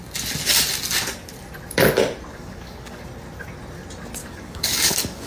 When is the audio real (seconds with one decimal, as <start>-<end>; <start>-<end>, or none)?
0.0-2.3; 3.0-4.2